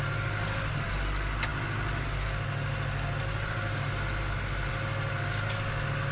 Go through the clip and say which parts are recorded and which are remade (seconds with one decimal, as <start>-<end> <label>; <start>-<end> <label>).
0.0-6.1 recorded